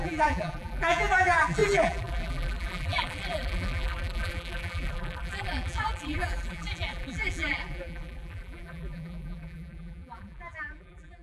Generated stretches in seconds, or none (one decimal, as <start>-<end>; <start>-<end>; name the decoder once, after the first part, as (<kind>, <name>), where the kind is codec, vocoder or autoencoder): 0.0-11.2 (vocoder, BigVGAN v2)